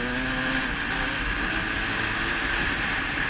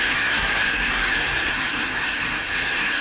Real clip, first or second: first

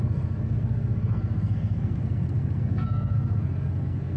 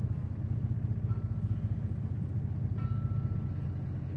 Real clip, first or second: second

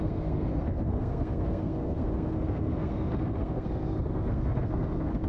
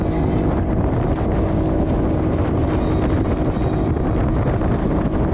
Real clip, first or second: second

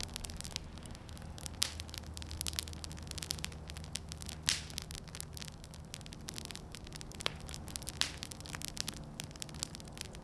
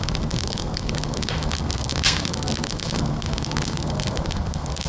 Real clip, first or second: first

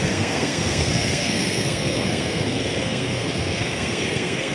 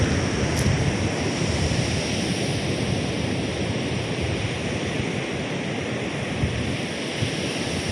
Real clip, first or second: second